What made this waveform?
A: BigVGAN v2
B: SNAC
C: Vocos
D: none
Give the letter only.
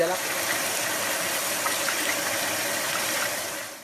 D